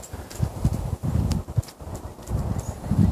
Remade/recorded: recorded